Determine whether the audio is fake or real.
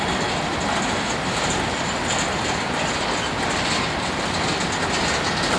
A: real